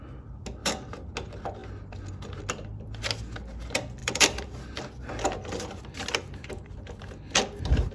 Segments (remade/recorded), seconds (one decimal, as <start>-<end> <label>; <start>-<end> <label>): 0.0-0.6 recorded; 0.6-1.1 remade; 1.1-4.0 recorded; 4.0-4.8 remade; 4.8-7.9 recorded